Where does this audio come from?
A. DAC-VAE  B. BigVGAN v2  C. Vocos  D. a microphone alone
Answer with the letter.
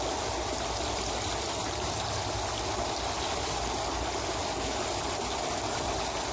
D